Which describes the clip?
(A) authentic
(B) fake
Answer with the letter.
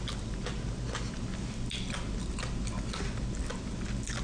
A